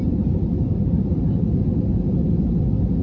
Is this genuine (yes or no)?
yes